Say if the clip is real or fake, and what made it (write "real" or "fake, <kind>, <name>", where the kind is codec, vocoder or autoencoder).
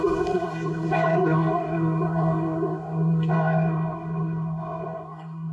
fake, codec, SNAC